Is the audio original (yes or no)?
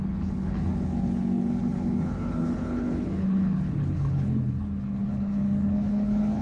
no